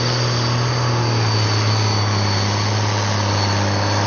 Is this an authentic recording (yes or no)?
yes